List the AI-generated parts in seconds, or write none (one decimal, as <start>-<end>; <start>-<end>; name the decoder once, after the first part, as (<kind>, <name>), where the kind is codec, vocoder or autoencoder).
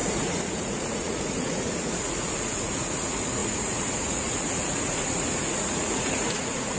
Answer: 0.0-6.8 (vocoder, Vocos)